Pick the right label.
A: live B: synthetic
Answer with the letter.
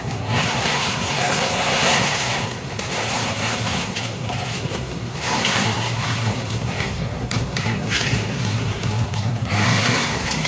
B